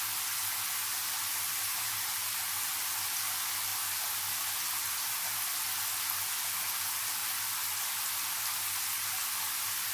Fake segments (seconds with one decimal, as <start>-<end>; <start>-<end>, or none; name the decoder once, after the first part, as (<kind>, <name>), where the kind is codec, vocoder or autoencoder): 1.0-2.8 (vocoder, BigVGAN v2)